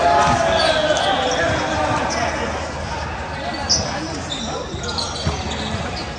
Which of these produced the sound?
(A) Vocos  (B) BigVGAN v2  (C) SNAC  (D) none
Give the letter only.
D